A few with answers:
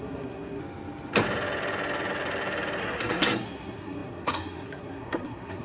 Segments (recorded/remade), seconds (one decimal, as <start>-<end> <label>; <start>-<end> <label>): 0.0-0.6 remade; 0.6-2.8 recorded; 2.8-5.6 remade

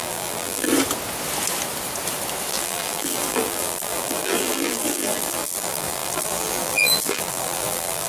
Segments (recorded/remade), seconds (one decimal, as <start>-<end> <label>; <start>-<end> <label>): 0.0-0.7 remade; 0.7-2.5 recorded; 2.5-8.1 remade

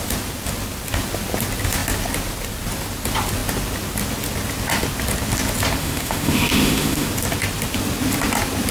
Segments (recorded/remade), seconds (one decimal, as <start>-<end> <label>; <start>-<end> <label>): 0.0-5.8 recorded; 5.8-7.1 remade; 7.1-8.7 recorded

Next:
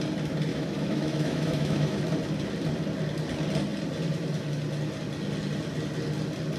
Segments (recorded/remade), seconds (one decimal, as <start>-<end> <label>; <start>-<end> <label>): 0.0-0.5 recorded; 0.5-2.0 remade; 2.0-6.6 recorded

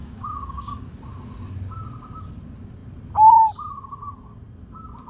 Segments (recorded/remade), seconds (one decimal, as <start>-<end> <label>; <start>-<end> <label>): 0.0-0.7 remade; 0.7-5.1 recorded

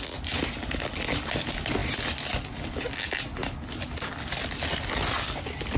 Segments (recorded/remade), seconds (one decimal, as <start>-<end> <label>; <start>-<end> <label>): 0.0-5.8 recorded

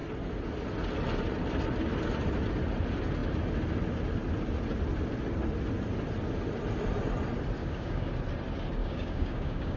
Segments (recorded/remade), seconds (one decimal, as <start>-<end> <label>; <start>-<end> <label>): 0.0-7.6 recorded; 7.6-8.1 remade; 8.1-8.8 recorded; 8.8-9.8 remade

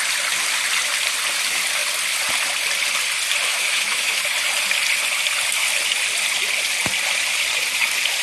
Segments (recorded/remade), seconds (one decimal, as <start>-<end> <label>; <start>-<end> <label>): 0.0-3.5 recorded; 3.5-4.2 remade; 4.2-8.2 recorded